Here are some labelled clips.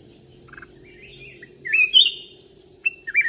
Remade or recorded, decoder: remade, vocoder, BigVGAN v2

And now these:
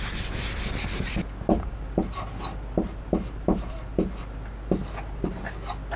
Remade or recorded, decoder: recorded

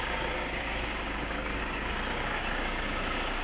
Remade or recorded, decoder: remade, codec, DAC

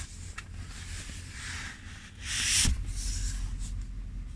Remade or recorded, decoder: recorded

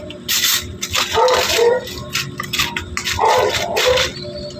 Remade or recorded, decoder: recorded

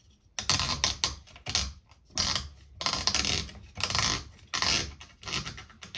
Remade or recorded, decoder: recorded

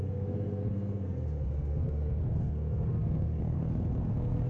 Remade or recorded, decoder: remade, codec, SNAC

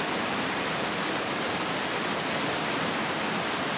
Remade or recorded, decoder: recorded